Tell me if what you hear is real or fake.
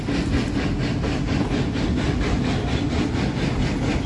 real